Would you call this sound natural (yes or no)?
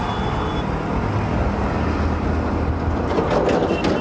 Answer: yes